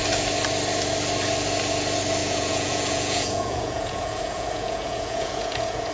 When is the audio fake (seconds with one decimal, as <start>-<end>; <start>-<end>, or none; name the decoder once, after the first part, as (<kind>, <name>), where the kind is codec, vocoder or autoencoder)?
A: 2.2-5.9 (vocoder, Vocos)